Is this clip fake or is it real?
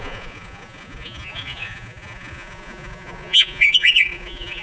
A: fake